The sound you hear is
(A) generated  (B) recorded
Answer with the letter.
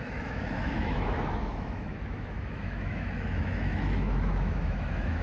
A